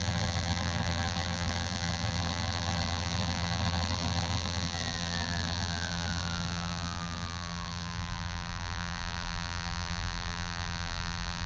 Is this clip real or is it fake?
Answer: fake